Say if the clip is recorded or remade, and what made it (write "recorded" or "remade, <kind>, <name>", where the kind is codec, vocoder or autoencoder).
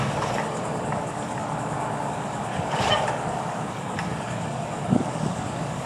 remade, codec, DAC